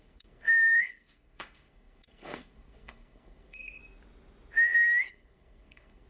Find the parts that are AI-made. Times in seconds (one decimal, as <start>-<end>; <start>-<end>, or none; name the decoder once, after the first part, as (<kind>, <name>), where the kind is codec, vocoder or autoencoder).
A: 0.0-3.8 (codec, SNAC); 5.1-6.1